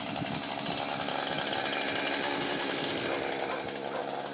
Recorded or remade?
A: recorded